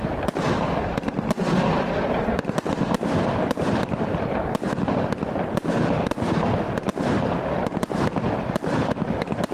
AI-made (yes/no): no